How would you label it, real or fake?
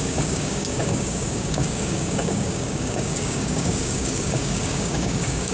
fake